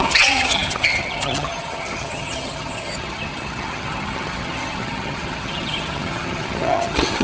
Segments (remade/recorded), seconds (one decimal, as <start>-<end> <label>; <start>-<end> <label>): 0.0-7.2 remade